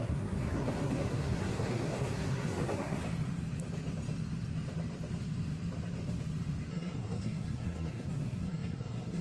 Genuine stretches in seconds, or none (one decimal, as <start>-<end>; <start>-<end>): 3.0-6.7